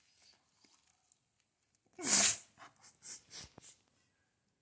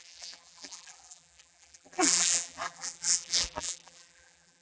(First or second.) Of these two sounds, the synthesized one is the second